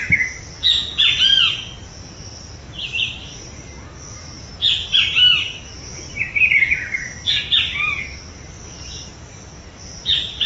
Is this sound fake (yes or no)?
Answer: no